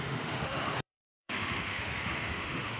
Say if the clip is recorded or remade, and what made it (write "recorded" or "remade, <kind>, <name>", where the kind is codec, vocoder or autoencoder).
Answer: remade, autoencoder, DAC-VAE